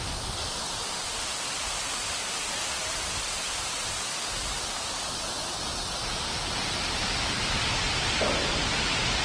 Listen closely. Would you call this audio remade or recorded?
recorded